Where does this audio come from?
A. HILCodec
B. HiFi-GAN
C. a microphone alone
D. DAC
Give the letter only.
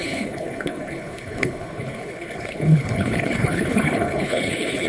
A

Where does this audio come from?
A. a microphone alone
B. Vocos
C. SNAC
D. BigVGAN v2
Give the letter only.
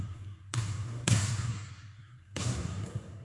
C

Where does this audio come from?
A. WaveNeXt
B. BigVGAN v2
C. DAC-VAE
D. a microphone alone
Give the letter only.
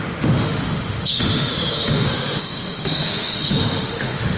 C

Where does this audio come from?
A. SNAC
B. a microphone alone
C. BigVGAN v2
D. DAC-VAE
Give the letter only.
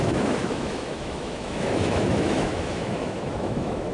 D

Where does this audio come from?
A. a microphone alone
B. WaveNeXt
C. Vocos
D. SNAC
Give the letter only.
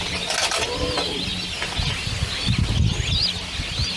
A